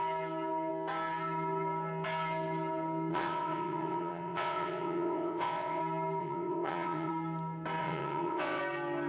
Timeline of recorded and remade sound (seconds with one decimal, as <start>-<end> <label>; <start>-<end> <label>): 0.0-3.1 recorded; 3.1-5.8 remade; 5.8-6.2 recorded; 6.2-7.1 remade; 7.1-7.8 recorded; 7.8-8.6 remade; 8.6-9.1 recorded